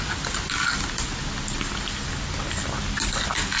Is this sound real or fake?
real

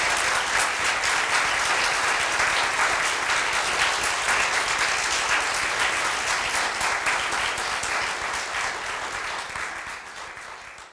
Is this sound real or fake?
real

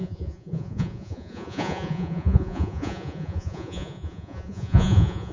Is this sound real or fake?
fake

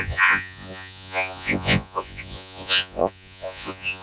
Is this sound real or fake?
fake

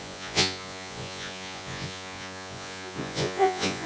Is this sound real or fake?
fake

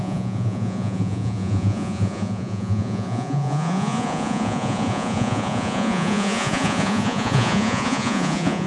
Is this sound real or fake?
fake